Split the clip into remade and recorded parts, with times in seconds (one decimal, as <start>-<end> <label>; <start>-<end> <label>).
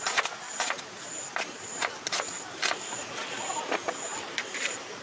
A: 0.0-4.1 recorded; 4.1-5.0 remade